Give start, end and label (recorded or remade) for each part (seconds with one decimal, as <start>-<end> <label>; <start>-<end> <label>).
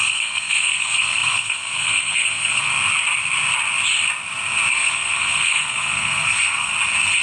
0.0-2.7 remade; 2.7-4.7 recorded; 4.7-6.7 remade; 6.7-7.2 recorded